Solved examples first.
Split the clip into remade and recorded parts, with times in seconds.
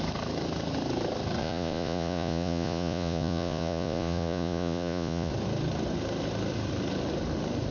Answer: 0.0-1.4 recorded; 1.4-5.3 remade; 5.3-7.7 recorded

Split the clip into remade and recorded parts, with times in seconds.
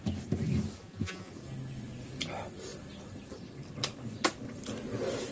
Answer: 0.0-0.8 recorded; 0.8-1.3 remade; 1.3-5.3 recorded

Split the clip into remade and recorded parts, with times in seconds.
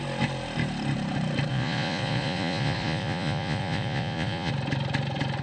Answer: 0.0-1.5 recorded; 1.5-4.5 remade; 4.5-5.4 recorded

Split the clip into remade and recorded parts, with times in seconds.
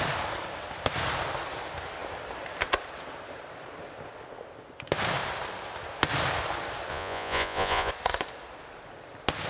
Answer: 0.0-6.9 recorded; 6.9-7.9 remade; 7.9-9.5 recorded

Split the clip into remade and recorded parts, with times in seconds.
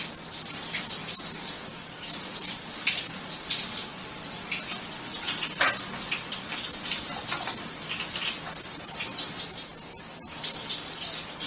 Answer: 0.0-11.5 recorded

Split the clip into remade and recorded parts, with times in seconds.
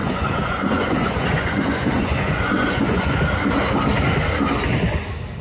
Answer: 0.0-3.2 remade; 3.2-5.4 recorded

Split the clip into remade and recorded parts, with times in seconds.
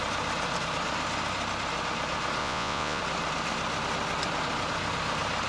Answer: 0.0-2.4 recorded; 2.4-3.0 remade; 3.0-5.5 recorded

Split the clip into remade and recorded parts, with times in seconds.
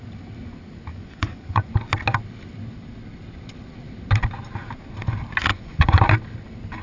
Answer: 0.0-0.9 recorded; 0.9-1.7 remade; 1.7-5.5 recorded; 5.5-6.0 remade; 6.0-6.8 recorded